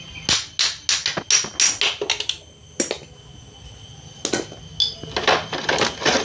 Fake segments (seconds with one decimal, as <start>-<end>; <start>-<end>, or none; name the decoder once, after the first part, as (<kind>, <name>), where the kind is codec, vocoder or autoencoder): none